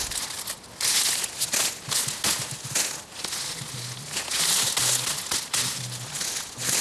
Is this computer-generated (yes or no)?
no